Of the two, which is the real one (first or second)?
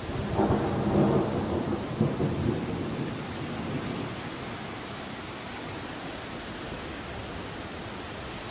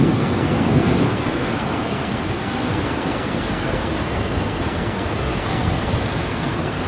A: first